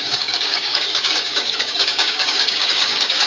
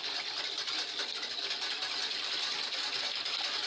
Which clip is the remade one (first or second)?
first